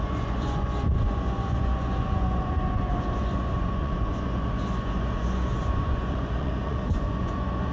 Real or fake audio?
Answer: fake